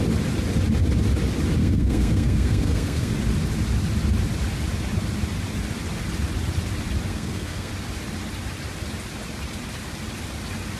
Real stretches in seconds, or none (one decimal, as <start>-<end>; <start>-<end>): 0.0-1.6; 3.1-7.1; 7.7-10.8